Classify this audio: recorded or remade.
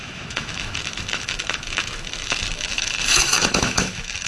remade